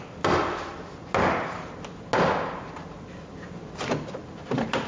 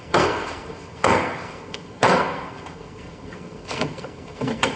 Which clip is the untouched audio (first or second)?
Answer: first